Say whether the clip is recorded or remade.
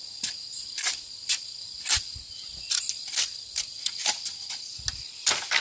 recorded